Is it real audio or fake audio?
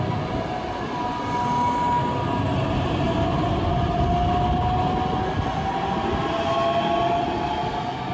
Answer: real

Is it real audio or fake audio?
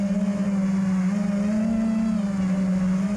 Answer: real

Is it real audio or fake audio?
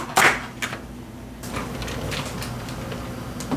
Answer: real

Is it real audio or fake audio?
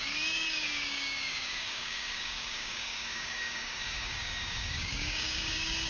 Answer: fake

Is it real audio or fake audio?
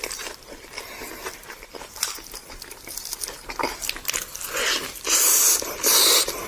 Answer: real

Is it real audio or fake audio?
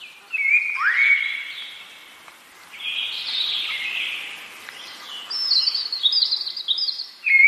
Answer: real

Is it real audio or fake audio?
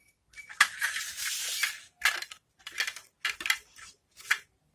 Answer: real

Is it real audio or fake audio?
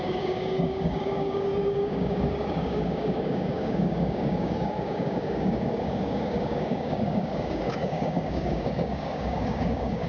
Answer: fake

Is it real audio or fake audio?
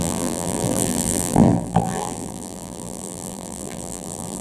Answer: fake